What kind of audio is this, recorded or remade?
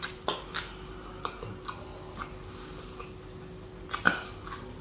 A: recorded